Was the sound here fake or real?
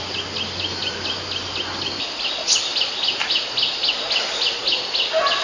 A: real